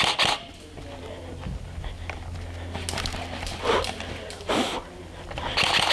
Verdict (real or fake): real